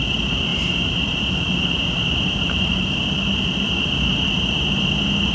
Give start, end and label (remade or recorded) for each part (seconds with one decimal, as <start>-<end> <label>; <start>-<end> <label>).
0.0-0.5 recorded; 0.5-3.7 remade; 3.7-5.3 recorded